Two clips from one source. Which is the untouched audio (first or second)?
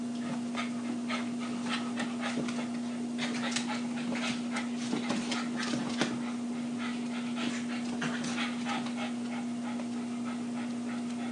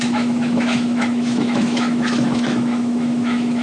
first